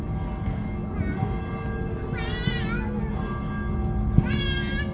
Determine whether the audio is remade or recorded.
recorded